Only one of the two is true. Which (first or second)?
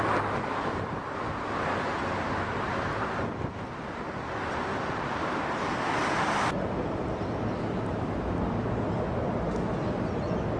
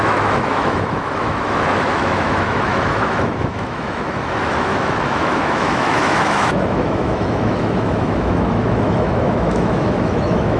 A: first